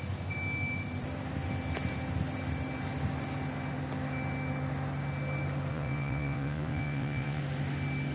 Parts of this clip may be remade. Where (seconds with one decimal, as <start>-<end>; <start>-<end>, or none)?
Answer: 5.7-7.4

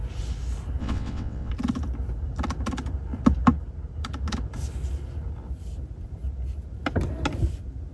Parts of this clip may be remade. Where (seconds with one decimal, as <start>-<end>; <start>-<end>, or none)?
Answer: 0.8-1.5

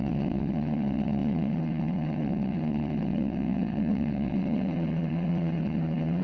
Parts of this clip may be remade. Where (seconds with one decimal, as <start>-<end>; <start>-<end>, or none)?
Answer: 0.0-6.2

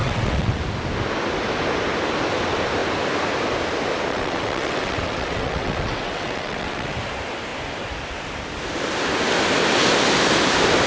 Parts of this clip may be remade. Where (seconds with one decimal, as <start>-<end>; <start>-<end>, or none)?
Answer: 0.0-0.6; 4.1-7.0

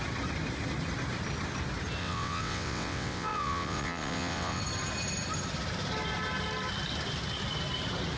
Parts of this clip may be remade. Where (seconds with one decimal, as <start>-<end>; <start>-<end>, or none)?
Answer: 2.0-4.6

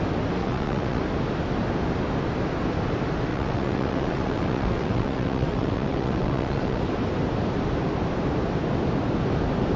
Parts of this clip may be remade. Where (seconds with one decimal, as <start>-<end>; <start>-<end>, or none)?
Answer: 0.4-1.0; 3.3-6.8

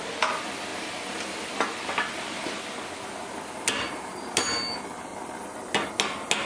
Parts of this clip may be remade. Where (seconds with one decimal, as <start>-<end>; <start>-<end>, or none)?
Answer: none